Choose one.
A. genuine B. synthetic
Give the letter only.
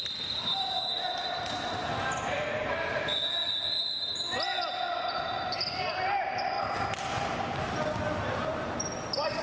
A